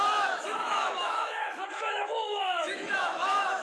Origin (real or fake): fake